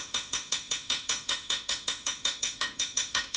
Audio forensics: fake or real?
fake